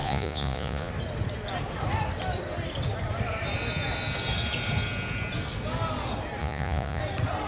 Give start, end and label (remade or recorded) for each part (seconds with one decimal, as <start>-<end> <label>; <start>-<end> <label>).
0.0-0.9 remade; 0.9-6.4 recorded; 6.4-7.0 remade; 7.0-7.5 recorded